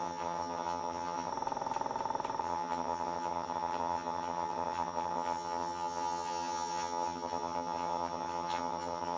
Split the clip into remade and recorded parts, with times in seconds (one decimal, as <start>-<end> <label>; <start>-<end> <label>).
0.0-1.3 remade; 1.3-2.4 recorded; 2.4-9.2 remade